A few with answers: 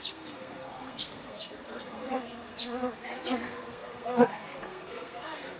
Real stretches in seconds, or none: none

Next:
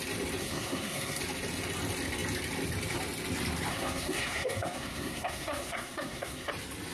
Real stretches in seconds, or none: 0.0-0.4; 1.2-3.7; 6.5-6.9

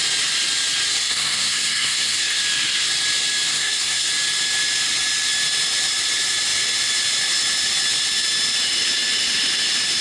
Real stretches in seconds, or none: 0.0-1.0; 2.4-3.5; 4.1-10.0

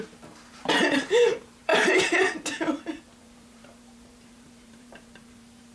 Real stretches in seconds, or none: 1.7-3.2

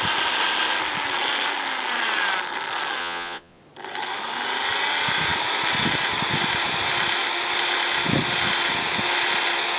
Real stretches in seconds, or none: 0.0-3.0; 3.6-9.8

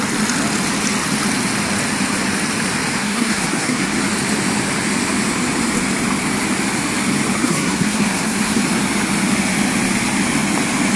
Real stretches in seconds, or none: 0.0-3.0; 4.0-7.4; 8.6-11.0

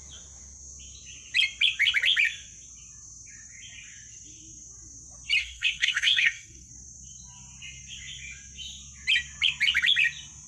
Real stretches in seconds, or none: 0.0-5.4; 6.7-10.5

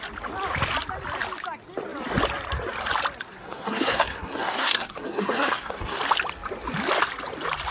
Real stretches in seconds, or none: 0.0-3.4; 6.0-7.7